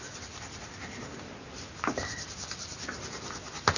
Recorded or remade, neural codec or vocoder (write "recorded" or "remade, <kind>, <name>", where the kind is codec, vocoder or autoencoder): recorded